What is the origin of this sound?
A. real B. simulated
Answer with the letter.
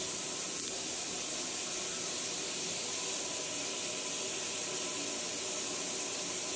A